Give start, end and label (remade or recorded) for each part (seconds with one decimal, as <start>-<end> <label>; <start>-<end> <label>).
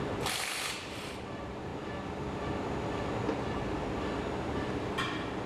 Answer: 0.0-1.7 remade; 1.7-4.7 recorded; 4.7-5.5 remade